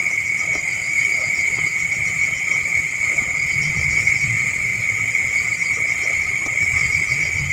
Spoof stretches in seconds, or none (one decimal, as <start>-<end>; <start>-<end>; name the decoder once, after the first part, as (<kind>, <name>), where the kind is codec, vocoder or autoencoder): none